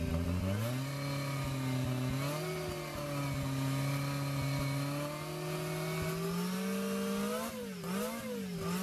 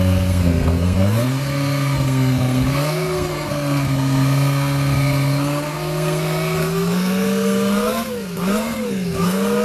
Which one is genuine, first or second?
first